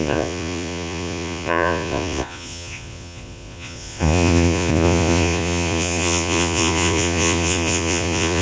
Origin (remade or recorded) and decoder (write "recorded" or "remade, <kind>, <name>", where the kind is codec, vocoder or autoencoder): remade, vocoder, Vocos